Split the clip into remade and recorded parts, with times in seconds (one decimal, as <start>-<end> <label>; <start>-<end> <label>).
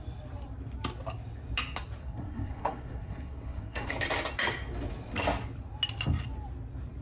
0.0-2.0 recorded; 2.0-3.9 remade; 3.9-7.0 recorded